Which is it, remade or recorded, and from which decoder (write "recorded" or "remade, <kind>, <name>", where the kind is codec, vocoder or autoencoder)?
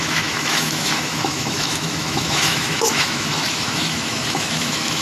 remade, autoencoder, DAC-VAE